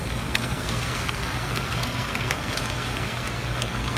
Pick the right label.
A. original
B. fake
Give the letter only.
B